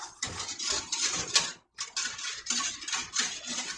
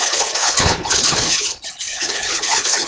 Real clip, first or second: first